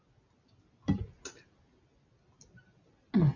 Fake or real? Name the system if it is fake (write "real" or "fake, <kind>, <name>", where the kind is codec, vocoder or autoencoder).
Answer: real